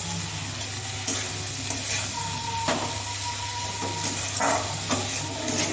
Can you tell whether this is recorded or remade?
recorded